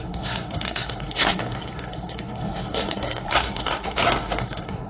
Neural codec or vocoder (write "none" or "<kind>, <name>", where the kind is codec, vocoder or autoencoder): codec, SNAC